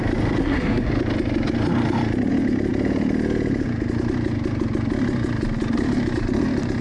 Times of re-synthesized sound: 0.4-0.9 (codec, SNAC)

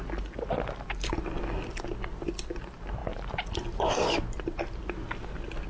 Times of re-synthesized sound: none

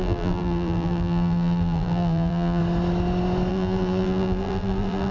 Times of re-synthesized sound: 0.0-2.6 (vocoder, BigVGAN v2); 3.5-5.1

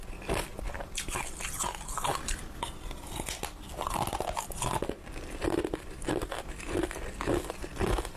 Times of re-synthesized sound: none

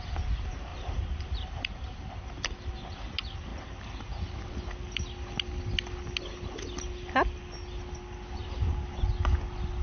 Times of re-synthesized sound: 0.7-2.9 (vocoder, BigVGAN v2); 3.5-4.0

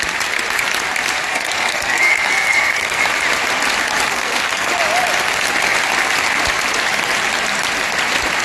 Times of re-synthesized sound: 1.3-3.0 (codec, SNAC); 4.1-4.7

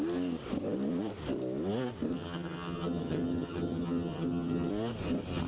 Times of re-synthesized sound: 2.1-4.7 (vocoder, HiFi-GAN)

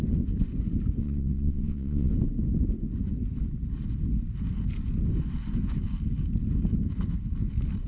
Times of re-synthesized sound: 1.0-2.1 (vocoder, WaveNeXt)